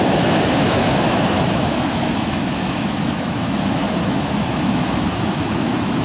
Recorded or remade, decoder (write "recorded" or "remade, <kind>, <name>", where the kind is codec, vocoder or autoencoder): remade, autoencoder, DAC-VAE